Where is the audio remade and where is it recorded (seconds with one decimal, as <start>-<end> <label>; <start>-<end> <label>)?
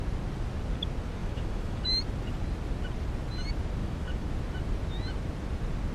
0.0-1.2 recorded; 1.2-1.8 remade; 1.8-3.8 recorded; 3.8-4.3 remade; 4.3-5.9 recorded